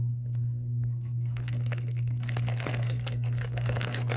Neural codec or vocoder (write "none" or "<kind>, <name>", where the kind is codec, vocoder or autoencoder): codec, SNAC